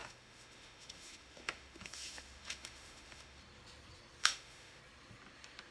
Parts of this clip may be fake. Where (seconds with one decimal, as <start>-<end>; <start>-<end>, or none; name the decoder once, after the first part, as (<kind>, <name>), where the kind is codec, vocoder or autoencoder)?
0.0-3.4 (autoencoder, DAC-VAE); 4.2-4.8